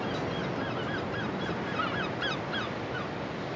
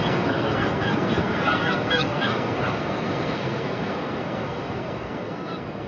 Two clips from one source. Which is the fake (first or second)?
second